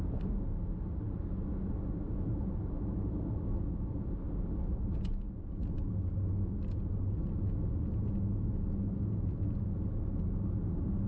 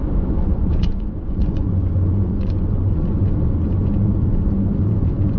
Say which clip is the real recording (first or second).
first